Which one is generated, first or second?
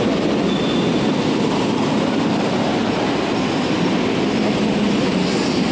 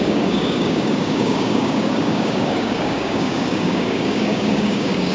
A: second